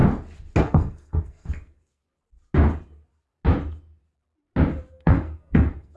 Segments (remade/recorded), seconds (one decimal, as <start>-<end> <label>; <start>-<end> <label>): 0.0-0.6 recorded; 0.6-2.0 remade; 2.0-4.9 recorded; 4.9-6.0 remade